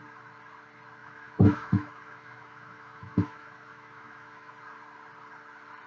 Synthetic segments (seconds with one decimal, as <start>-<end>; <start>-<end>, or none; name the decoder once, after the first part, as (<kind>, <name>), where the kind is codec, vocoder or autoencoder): 1.0-4.5 (autoencoder, DAC-VAE)